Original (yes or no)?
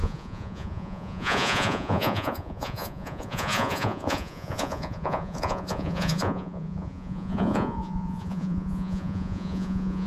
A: no